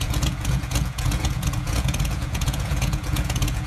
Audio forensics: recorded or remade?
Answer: remade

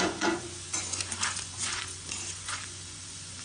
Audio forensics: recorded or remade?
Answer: remade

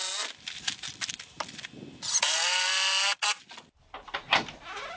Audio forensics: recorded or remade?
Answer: recorded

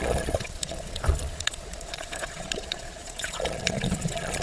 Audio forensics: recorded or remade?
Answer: remade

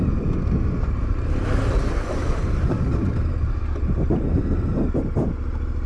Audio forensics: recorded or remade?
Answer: recorded